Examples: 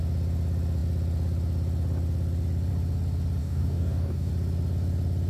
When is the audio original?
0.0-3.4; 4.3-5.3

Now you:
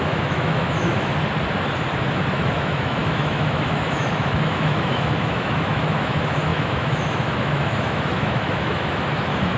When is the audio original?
1.1-2.3